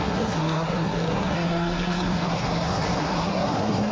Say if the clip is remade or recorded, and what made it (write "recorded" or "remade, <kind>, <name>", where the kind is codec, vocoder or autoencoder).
remade, codec, SNAC